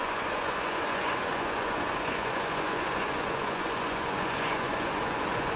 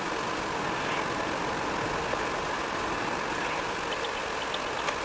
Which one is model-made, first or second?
first